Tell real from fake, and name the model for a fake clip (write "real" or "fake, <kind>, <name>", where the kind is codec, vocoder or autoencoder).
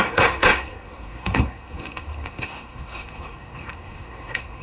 fake, codec, SNAC